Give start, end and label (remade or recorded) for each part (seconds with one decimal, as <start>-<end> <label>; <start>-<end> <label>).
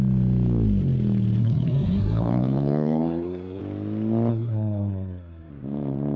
0.0-1.4 recorded; 1.4-3.6 remade; 3.6-4.3 recorded; 4.3-5.5 remade; 5.5-6.2 recorded